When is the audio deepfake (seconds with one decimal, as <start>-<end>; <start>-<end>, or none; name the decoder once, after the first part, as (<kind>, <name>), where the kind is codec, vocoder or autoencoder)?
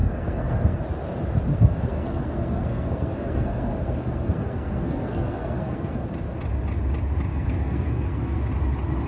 0.0-0.8 (codec, SNAC); 1.5-6.0; 7.3-8.4